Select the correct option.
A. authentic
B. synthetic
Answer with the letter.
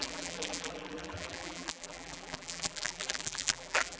B